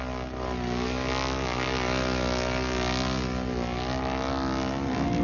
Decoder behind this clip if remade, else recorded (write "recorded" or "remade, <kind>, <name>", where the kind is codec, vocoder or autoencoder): recorded